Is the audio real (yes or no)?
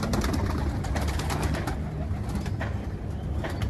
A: yes